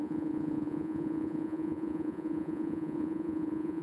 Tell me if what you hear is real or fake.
fake